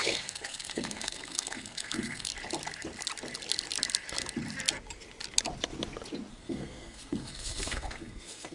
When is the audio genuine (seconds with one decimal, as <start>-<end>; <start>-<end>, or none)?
2.3-6.3